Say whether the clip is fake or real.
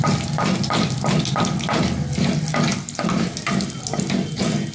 real